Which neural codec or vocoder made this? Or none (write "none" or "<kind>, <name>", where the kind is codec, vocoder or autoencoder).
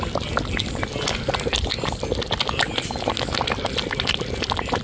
none